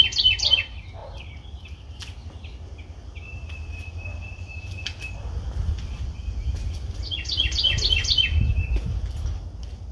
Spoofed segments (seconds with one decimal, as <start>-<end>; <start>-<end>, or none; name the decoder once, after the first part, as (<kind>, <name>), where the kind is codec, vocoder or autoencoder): none